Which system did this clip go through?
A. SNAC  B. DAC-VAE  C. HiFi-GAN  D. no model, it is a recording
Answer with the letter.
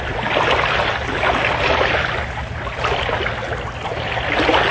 D